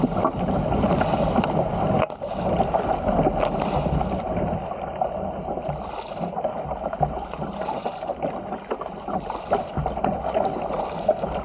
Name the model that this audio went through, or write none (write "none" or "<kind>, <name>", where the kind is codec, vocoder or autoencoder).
none